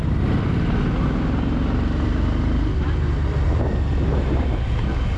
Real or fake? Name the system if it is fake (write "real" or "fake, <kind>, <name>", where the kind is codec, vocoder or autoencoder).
real